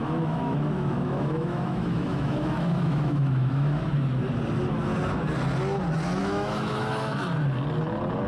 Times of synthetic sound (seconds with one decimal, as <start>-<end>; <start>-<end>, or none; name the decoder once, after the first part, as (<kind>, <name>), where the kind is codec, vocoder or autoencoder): 0.0-3.9 (autoencoder, DAC-VAE); 6.2-7.2